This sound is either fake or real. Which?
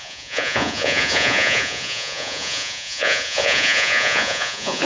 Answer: fake